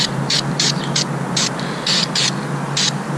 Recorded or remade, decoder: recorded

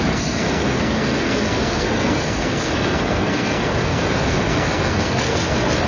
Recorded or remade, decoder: remade, codec, SNAC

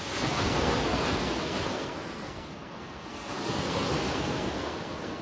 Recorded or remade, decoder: remade, codec, SNAC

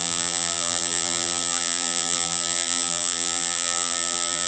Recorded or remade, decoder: remade, vocoder, BigVGAN v2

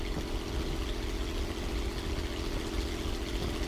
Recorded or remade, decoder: recorded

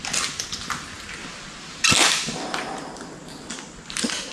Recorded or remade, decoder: recorded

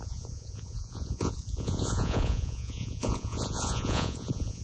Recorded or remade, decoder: remade, vocoder, Vocos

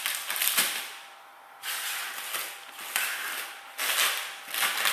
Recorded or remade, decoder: recorded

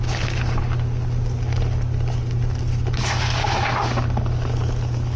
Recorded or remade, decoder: recorded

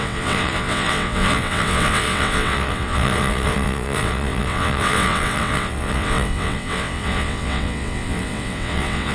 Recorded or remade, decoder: remade, vocoder, WaveNeXt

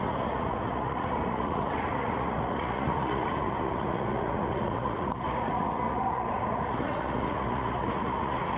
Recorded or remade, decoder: remade, vocoder, Vocos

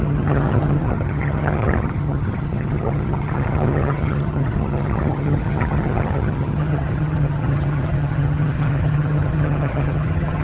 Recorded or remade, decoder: remade, vocoder, HiFi-GAN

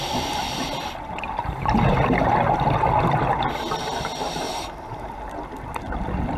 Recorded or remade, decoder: recorded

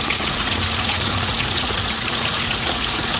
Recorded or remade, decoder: remade, vocoder, Vocos